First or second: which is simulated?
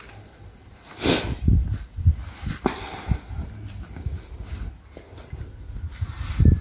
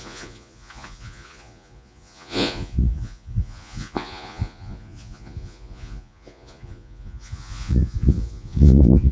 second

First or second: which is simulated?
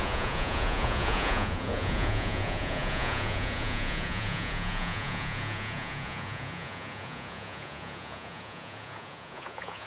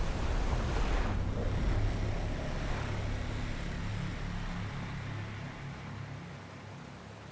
first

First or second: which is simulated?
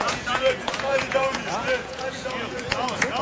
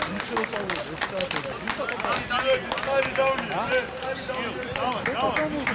first